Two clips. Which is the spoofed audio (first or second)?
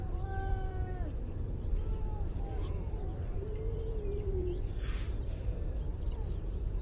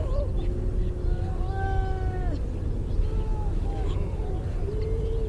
first